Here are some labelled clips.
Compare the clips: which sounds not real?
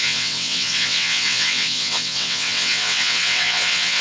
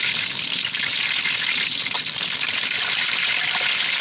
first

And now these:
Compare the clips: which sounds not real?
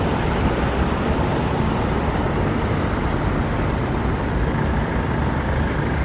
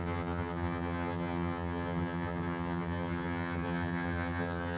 second